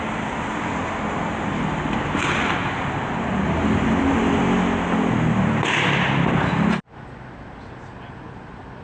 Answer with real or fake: real